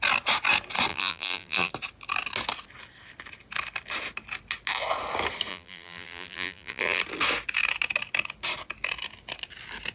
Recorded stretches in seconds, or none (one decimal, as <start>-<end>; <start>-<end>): 0.0-0.9; 1.7-5.5; 7.0-9.9